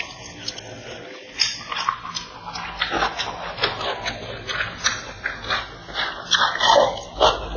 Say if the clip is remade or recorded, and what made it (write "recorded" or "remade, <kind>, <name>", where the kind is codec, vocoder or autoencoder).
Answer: recorded